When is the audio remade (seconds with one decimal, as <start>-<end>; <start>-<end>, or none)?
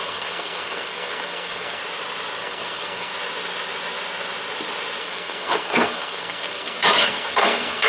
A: 0.0-1.8; 2.4-3.1; 5.0-7.9